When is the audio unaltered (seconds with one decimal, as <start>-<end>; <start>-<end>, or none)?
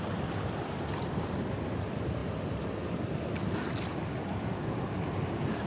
0.0-5.7